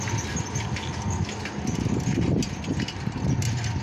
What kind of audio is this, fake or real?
real